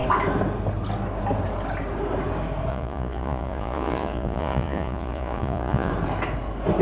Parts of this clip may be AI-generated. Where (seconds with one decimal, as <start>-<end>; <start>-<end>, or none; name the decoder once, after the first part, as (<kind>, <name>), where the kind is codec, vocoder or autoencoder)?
2.7-5.9 (vocoder, Vocos)

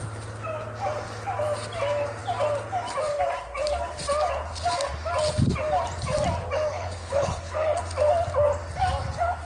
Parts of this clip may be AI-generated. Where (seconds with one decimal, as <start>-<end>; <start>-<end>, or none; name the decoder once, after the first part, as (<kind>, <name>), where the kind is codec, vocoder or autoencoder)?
6.7-7.8 (codec, HILCodec)

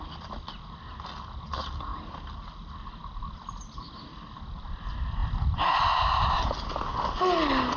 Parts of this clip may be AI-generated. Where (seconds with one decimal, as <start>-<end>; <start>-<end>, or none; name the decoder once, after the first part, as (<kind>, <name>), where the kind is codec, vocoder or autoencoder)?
none

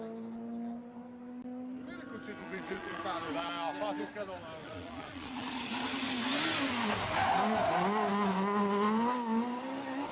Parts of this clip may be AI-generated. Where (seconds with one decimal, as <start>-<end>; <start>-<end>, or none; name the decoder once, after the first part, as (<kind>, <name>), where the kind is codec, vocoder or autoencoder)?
2.4-3.0 (vocoder, Vocos); 4.6-5.7

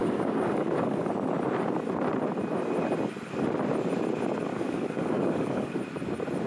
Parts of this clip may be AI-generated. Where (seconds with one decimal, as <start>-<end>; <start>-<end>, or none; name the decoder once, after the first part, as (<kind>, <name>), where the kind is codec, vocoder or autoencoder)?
0.0-1.1 (codec, DAC); 4.5-5.8